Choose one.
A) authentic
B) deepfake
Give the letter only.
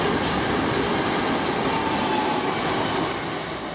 A